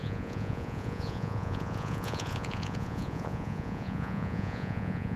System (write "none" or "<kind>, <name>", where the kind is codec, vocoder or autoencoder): vocoder, Vocos